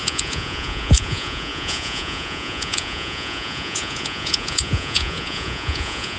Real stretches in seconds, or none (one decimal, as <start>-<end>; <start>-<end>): none

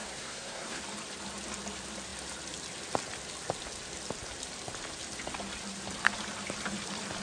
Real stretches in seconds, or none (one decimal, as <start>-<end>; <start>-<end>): 0.8-7.2

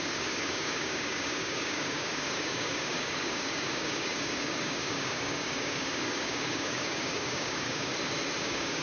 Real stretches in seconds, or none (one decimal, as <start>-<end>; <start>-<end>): 7.9-8.4